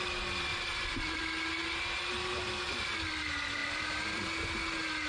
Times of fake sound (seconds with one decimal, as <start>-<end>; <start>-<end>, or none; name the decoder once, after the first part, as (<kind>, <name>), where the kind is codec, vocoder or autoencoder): 0.5-1.2 (vocoder, BigVGAN v2); 3.6-4.2